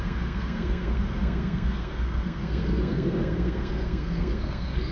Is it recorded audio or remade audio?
remade